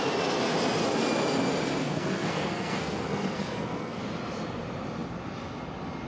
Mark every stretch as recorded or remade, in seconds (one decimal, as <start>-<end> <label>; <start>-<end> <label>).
0.0-1.8 recorded; 1.8-4.0 remade; 4.0-6.1 recorded